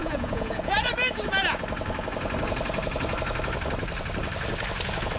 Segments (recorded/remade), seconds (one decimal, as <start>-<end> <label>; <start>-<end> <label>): 0.0-0.9 remade; 0.9-5.2 recorded